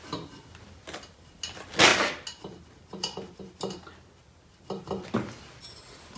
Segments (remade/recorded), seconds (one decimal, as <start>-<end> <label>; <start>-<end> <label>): 0.0-6.2 recorded